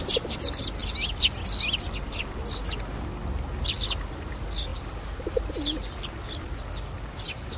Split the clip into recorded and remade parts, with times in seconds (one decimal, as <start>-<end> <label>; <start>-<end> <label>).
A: 0.0-7.6 recorded